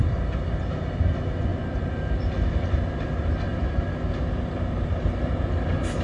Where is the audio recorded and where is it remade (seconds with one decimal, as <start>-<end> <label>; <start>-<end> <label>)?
0.0-1.5 recorded; 1.5-2.5 remade; 2.5-6.0 recorded